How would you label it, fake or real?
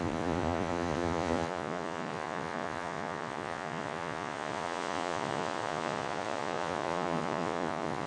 fake